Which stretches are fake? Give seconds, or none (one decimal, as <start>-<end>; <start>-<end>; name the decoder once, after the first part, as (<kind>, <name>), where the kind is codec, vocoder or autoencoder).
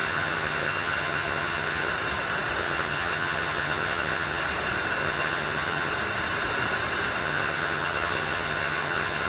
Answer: 0.0-1.9 (vocoder, HiFi-GAN); 2.6-4.4; 5.0-5.9; 7.2-9.3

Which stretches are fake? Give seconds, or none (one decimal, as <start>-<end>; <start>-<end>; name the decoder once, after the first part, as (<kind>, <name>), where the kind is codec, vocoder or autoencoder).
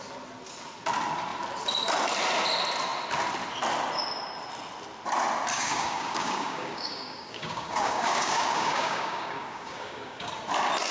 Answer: 5.5-10.3 (codec, DAC)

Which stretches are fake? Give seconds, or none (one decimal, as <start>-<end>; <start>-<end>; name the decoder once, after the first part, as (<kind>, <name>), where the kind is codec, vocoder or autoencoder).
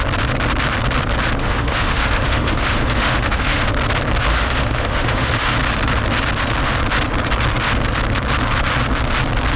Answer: 1.4-3.7 (autoencoder, DAC-VAE); 4.3-5.3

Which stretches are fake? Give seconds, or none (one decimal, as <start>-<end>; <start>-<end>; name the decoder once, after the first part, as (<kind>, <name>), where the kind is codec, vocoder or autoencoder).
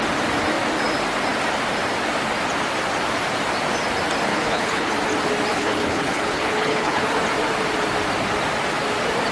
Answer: 4.3-4.9 (codec, HILCodec); 5.5-7.0